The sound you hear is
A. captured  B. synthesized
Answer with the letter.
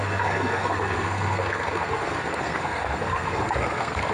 B